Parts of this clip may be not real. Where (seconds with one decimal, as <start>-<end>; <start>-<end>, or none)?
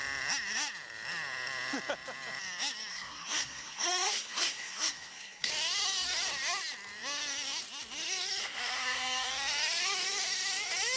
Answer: 2.9-5.5; 8.4-9.3